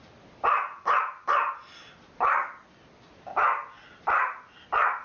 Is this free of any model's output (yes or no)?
yes